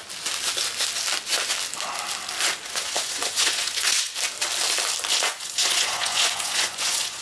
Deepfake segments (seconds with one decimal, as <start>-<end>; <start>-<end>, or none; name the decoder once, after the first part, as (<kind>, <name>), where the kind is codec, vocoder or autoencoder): 2.7-4.1 (vocoder, Vocos); 5.1-7.2